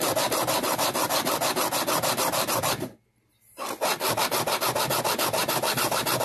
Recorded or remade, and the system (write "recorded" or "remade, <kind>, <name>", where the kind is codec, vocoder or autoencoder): recorded